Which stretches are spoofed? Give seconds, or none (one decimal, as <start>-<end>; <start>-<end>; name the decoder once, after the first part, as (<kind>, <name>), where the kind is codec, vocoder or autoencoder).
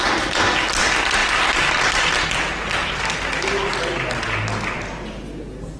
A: none